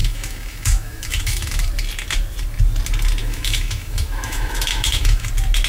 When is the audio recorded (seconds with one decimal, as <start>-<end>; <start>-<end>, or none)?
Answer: 1.7-3.2; 5.3-5.7